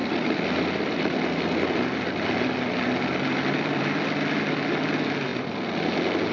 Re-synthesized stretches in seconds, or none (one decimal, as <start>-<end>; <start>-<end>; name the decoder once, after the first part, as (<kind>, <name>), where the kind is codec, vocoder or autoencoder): none